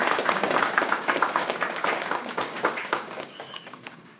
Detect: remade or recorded remade